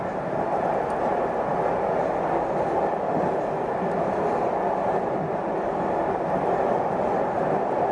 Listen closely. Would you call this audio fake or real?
real